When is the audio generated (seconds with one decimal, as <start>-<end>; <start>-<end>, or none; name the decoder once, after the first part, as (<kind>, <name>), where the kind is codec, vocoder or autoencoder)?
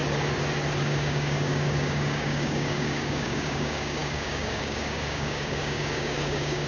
0.8-6.7 (codec, DAC)